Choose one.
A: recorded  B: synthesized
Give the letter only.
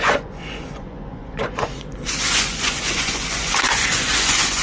B